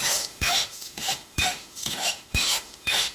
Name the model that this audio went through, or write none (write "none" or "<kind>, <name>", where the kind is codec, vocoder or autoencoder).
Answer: autoencoder, DAC-VAE